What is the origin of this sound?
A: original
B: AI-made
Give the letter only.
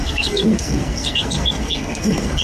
B